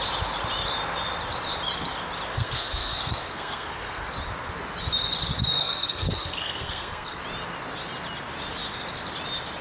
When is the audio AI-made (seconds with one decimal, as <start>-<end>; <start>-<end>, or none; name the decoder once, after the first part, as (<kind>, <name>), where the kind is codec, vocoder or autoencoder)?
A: 2.3-4.1 (codec, SNAC); 5.6-7.2